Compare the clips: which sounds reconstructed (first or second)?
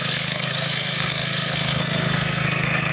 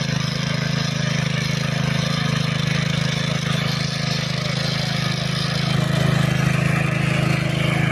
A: first